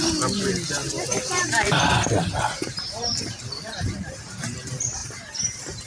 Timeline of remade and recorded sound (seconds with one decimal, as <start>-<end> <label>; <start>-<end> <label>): 0.0-0.8 recorded; 0.8-4.1 remade; 4.1-5.0 recorded; 5.0-5.9 remade